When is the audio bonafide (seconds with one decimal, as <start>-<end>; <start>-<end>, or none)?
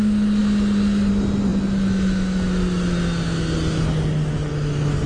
0.0-5.1